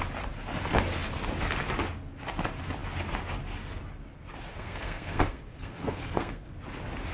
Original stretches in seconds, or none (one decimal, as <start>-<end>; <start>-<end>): 0.0-4.5; 6.5-7.1